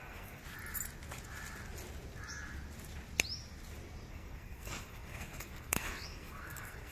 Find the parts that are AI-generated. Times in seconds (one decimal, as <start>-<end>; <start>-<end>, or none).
0.0-0.4; 4.1-6.9